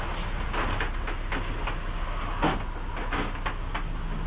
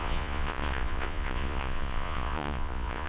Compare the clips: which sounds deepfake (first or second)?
second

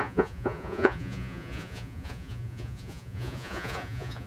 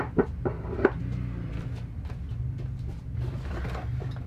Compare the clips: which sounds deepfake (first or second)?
first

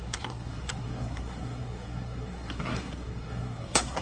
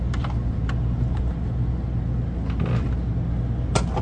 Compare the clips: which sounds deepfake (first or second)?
first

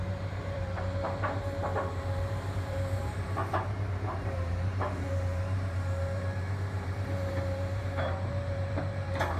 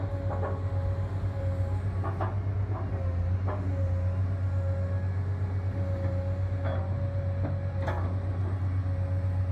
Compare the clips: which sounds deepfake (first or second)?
first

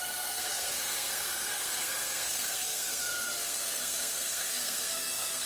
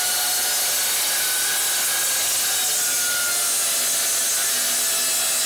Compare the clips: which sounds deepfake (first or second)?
first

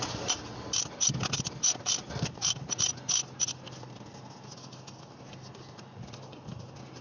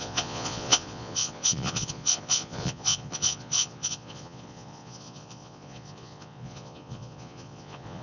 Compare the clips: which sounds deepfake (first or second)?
second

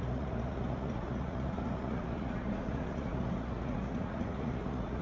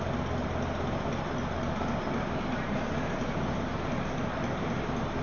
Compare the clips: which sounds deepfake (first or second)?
first